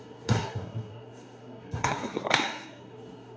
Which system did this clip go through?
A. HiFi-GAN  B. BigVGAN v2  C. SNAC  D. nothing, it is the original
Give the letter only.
C